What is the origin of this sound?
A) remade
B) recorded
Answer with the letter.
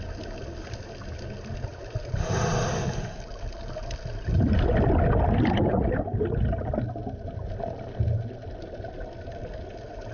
B